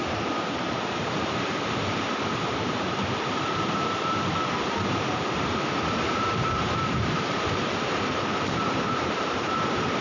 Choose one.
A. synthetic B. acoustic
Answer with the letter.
A